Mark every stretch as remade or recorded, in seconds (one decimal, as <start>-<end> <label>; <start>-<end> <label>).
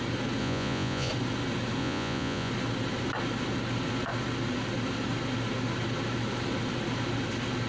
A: 0.0-0.4 recorded; 0.4-1.1 remade; 1.1-1.8 recorded; 1.8-2.5 remade; 2.5-7.7 recorded